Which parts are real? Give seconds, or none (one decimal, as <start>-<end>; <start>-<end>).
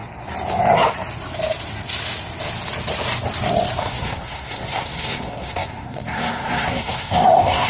0.0-3.8